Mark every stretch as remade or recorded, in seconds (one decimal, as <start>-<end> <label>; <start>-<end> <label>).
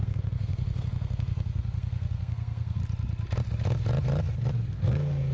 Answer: 0.0-2.8 remade; 2.8-4.5 recorded; 4.5-5.3 remade